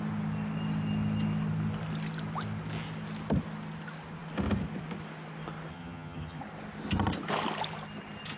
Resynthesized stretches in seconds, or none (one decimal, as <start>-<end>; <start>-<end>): 5.7-6.4